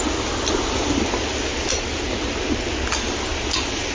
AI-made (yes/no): no